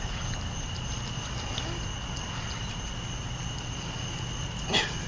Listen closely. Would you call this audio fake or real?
real